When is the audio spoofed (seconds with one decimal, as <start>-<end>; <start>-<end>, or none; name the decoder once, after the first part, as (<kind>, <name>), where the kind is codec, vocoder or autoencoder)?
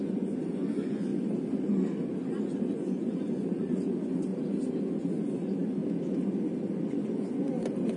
0.0-1.1 (vocoder, Vocos); 2.2-4.3; 4.9-5.8; 6.8-8.0